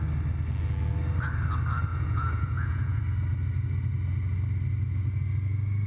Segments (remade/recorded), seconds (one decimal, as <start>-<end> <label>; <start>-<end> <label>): 0.0-1.9 recorded; 1.9-3.0 remade; 3.0-5.9 recorded

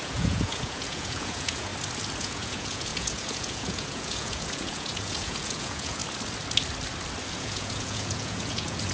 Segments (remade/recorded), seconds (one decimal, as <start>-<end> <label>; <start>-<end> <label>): 0.0-1.7 remade; 1.7-2.2 recorded; 2.2-6.0 remade; 6.0-7.3 recorded; 7.3-8.9 remade